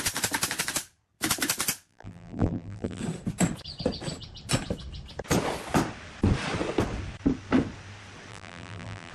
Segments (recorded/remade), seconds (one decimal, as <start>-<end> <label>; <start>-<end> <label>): 0.0-1.9 recorded; 1.9-3.0 remade; 3.0-8.3 recorded; 8.3-9.1 remade